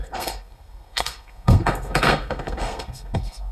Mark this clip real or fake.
fake